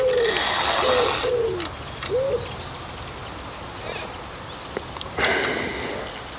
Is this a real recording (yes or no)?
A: yes